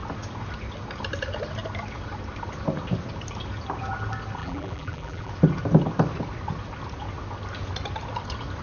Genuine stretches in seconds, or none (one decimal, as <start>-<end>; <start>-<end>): 0.0-4.4; 5.3-8.6